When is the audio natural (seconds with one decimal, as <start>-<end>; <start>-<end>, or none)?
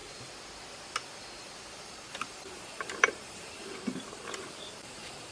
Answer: 0.0-1.7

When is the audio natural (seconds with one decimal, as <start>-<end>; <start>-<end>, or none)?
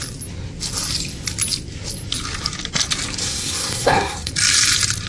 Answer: 0.0-3.2; 4.3-5.1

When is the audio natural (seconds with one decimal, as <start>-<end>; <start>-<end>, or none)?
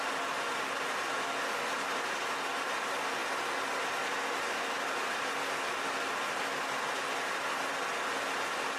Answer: 0.0-8.8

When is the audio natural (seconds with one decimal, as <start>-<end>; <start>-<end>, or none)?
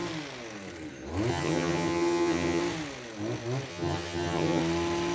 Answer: 0.0-1.3; 2.6-3.7; 4.6-5.1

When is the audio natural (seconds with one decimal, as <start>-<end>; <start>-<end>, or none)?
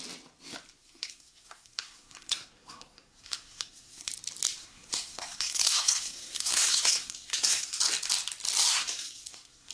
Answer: 0.0-0.8; 4.1-4.6; 7.8-8.7